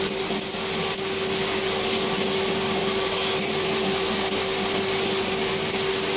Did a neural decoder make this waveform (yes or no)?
no